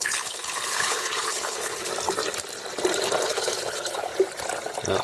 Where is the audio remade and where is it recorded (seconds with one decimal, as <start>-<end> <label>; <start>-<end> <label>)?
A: 0.0-1.9 remade; 1.9-3.2 recorded; 3.2-4.1 remade; 4.1-5.0 recorded